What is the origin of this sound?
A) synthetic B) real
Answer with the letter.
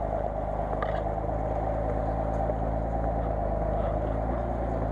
B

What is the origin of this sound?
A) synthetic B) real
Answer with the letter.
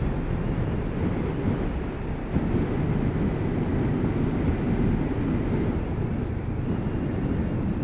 B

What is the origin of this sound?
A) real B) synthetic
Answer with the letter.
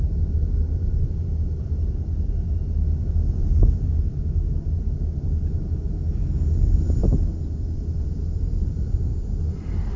A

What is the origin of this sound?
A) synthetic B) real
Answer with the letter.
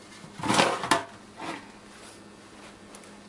B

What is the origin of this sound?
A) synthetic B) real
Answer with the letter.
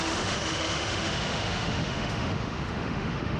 A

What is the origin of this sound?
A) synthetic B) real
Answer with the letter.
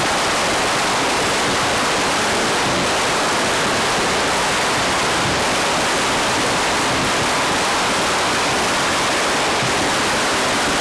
B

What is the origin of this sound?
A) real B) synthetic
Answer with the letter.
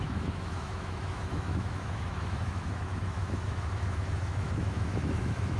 B